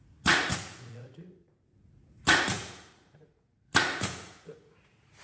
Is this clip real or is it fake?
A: fake